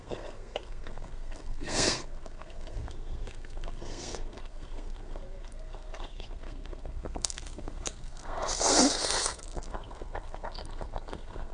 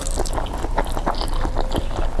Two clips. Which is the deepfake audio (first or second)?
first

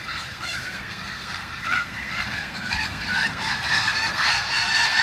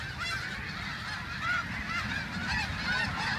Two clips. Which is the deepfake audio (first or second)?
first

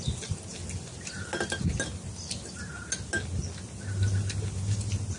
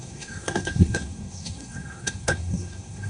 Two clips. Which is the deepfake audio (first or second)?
second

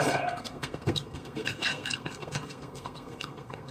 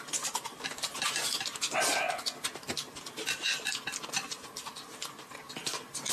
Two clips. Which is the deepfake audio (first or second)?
first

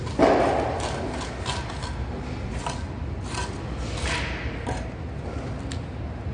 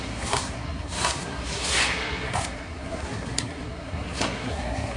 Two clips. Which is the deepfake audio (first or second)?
second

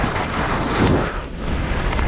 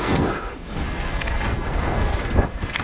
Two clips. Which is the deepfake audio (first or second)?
second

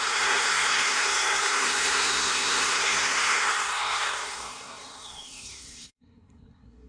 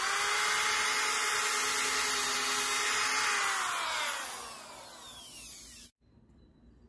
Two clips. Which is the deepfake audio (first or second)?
first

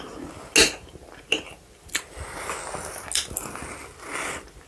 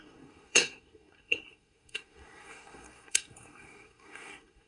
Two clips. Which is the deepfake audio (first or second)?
second